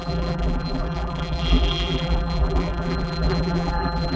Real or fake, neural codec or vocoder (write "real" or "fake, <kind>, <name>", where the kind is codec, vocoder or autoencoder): fake, vocoder, BigVGAN v2